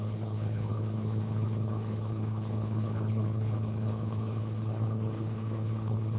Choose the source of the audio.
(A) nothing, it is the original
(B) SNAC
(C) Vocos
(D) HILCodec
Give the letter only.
D